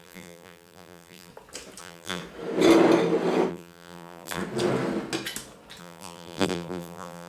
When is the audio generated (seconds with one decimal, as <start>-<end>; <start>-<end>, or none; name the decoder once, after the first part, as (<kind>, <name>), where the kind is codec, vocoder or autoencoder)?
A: 0.0-1.3 (vocoder, BigVGAN v2); 1.8-2.2; 3.5-4.4; 5.8-7.3